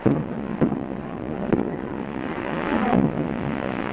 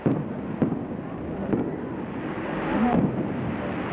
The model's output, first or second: first